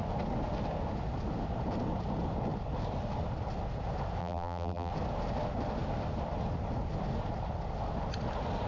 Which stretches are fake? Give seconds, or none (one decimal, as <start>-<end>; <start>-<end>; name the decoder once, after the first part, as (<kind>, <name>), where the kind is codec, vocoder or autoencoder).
4.2-4.9 (vocoder, BigVGAN v2)